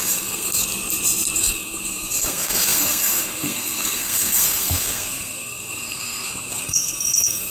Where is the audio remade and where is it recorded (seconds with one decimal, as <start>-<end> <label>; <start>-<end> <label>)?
0.0-0.6 remade; 0.6-1.4 recorded; 1.4-7.5 remade